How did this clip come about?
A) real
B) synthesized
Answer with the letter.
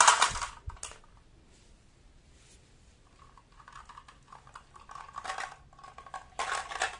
A